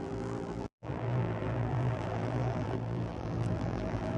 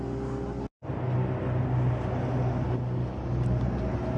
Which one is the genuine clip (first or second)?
second